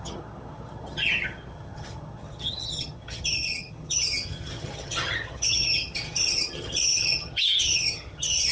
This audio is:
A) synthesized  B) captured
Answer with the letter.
A